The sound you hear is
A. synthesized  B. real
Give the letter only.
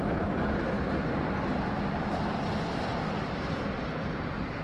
B